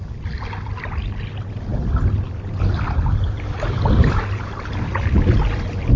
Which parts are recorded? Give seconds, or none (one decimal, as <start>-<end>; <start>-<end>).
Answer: 0.0-6.0